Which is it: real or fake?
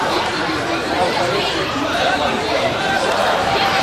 fake